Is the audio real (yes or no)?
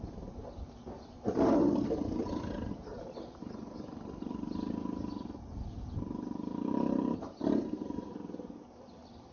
no